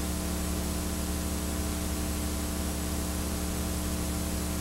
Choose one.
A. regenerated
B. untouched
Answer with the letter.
A